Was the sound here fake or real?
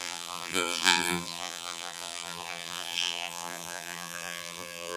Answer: fake